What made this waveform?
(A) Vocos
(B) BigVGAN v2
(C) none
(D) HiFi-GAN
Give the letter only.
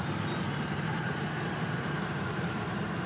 B